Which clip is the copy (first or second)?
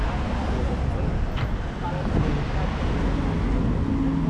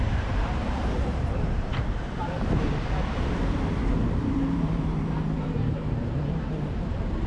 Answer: second